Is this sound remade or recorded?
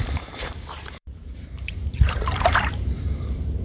remade